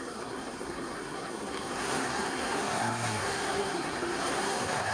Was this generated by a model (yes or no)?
yes